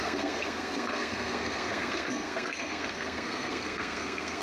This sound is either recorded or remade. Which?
remade